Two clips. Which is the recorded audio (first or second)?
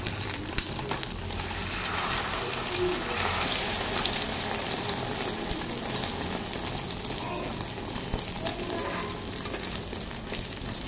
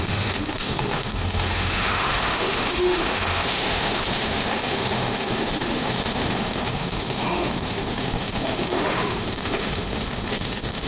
first